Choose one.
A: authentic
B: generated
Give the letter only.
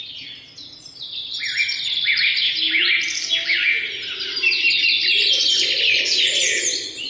A